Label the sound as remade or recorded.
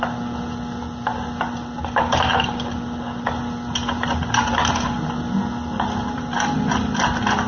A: recorded